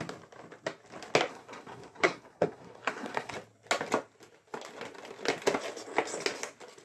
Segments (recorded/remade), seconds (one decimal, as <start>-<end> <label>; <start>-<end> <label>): 0.0-1.3 recorded; 1.3-3.3 remade; 3.3-6.8 recorded

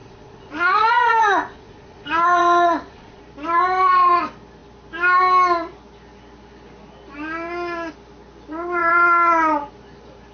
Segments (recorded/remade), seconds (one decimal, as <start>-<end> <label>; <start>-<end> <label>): 0.0-3.2 remade; 3.2-10.3 recorded